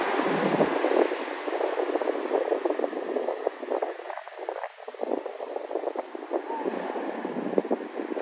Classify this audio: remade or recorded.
recorded